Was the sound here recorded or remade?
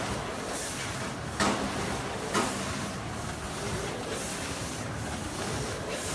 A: recorded